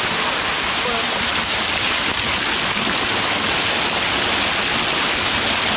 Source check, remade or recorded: recorded